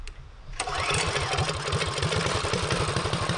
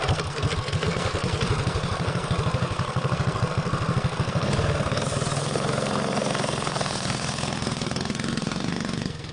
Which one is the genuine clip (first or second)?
first